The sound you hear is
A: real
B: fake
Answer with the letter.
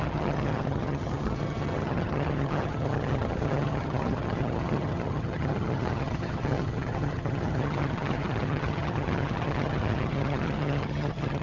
B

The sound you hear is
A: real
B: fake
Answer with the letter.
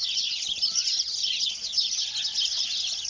A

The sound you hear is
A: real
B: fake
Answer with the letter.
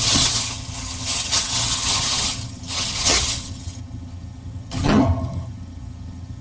B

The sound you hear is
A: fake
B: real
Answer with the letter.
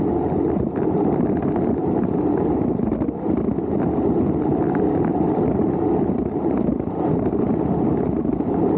B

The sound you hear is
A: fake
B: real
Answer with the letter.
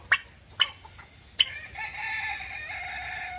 B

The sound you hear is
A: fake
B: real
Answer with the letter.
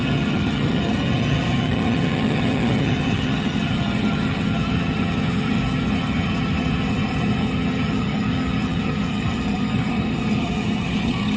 A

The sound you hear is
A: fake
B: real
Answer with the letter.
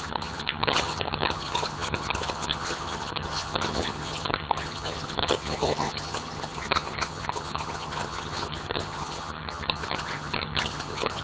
A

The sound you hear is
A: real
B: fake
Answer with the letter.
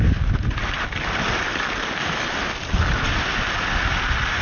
A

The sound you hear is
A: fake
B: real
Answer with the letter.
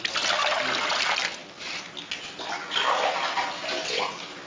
B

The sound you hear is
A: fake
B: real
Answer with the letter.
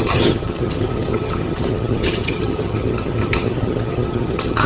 A